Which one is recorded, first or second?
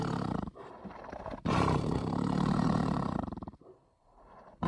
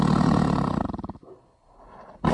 second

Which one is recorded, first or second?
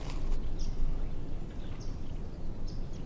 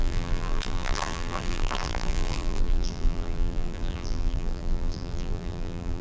first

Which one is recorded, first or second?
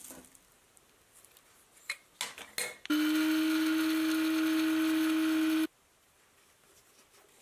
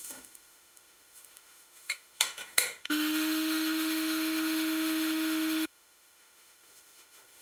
first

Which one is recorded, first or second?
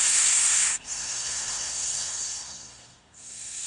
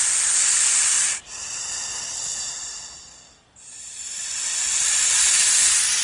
second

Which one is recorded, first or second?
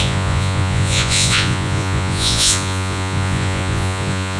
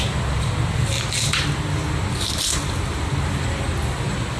second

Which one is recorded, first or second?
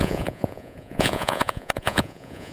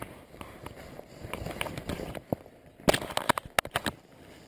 second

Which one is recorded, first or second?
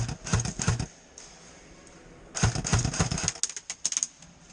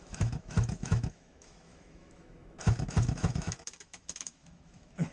first